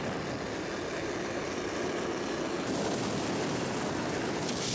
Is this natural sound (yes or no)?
yes